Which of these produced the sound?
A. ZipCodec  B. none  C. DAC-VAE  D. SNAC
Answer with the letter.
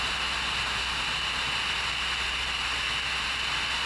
B